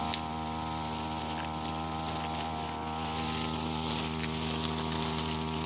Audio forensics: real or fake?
real